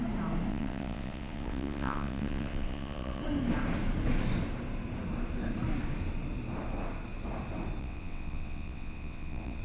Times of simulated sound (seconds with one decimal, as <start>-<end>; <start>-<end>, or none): 0.5-3.2; 7.8-9.6